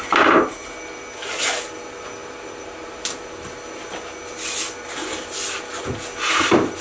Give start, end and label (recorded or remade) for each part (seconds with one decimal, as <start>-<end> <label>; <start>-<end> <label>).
0.0-6.8 recorded